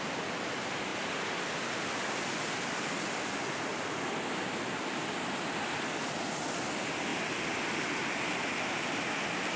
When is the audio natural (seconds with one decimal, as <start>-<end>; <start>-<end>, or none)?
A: 0.0-9.6